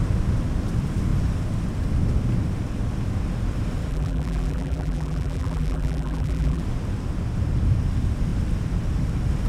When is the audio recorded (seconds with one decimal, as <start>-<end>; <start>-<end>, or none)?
0.0-3.9; 6.6-9.5